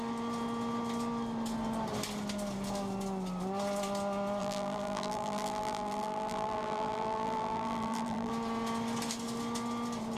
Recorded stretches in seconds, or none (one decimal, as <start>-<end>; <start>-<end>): 0.0-4.4; 8.3-10.2